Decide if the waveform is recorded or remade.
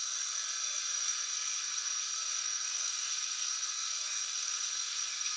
remade